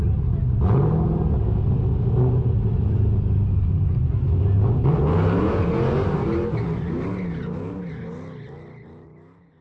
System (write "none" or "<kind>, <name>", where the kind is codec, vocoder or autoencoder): none